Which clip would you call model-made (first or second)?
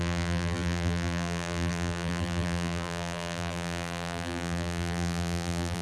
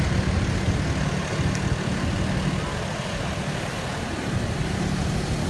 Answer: first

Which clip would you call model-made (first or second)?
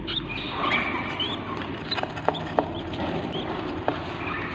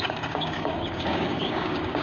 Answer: second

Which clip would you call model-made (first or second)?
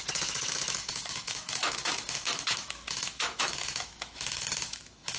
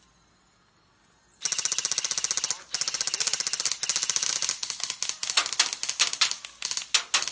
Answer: first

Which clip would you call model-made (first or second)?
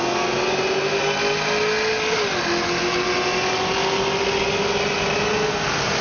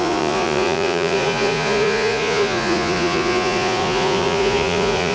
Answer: second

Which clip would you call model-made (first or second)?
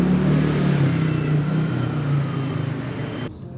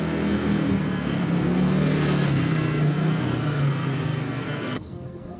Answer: second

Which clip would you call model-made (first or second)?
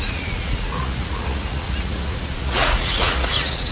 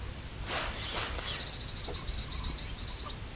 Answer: first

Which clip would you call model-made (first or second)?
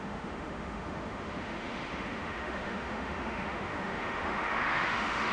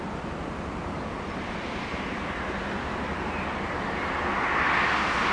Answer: first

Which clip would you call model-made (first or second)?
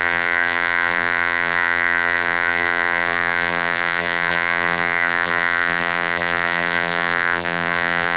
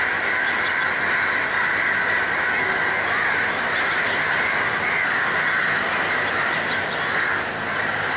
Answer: first